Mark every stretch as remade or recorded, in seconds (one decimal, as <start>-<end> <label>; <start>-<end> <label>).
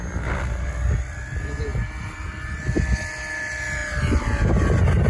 0.0-5.1 recorded